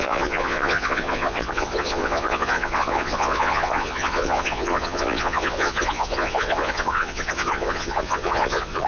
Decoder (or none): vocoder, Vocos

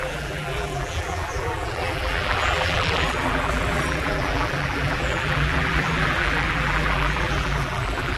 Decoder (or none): vocoder, BigVGAN v2